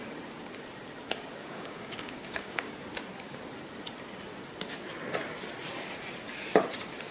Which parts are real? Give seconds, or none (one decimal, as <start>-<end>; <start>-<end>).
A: 0.0-1.4; 2.7-7.1